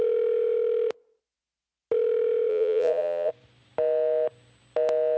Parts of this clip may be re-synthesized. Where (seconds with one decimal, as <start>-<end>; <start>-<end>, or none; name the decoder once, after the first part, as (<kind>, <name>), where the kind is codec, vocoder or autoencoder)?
2.5-3.3 (vocoder, Vocos)